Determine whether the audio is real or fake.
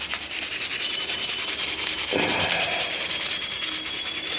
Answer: fake